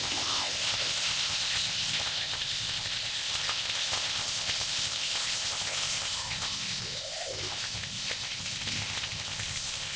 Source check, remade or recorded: remade